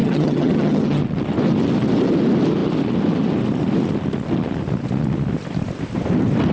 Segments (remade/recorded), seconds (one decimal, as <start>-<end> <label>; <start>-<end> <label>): 0.0-1.0 remade; 1.0-6.5 recorded